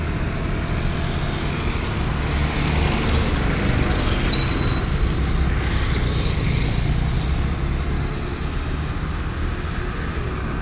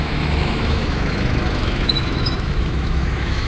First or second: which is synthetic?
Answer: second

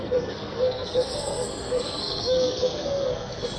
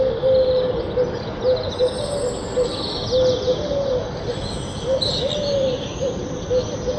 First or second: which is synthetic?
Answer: first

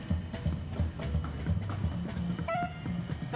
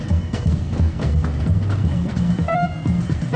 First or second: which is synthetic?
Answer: second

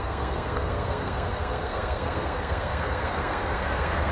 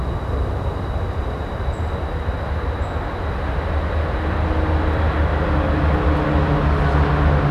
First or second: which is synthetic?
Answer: first